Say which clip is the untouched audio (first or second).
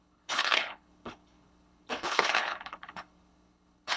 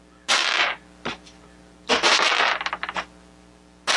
second